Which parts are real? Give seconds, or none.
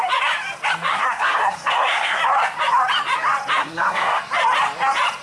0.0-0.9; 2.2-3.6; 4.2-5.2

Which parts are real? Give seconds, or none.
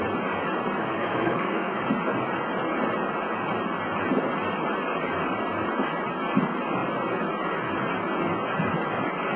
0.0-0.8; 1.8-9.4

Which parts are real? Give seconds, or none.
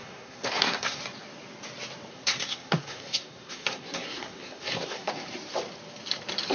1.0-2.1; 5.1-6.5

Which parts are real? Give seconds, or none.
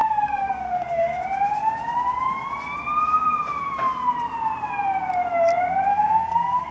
1.2-5.9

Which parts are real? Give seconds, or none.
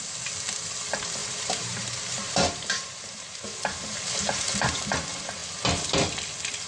0.0-1.2; 4.8-6.7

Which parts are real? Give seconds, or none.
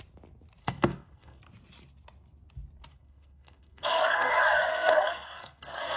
0.0-0.6; 1.4-2.9; 4.3-4.7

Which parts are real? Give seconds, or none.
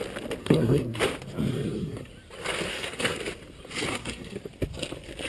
0.0-0.4; 1.0-1.5; 2.1-2.7; 3.2-3.9; 4.4-5.3